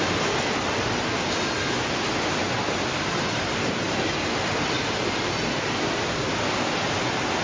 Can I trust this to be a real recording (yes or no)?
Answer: yes